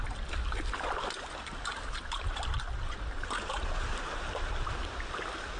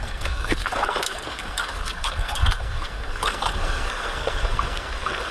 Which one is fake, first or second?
second